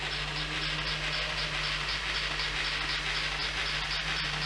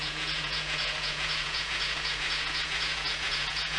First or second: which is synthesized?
second